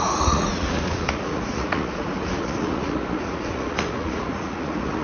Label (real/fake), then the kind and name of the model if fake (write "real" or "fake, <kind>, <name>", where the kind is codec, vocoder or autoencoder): fake, vocoder, Vocos